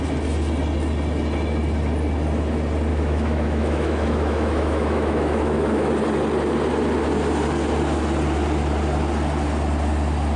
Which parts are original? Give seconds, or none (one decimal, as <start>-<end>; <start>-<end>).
0.0-2.9; 5.9-10.4